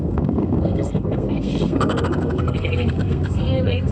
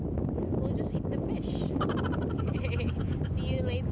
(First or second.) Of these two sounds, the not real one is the first